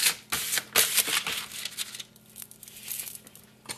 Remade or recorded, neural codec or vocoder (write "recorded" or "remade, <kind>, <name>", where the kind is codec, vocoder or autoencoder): recorded